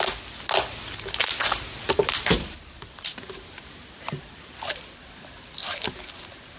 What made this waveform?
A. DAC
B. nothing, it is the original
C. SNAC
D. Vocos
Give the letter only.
B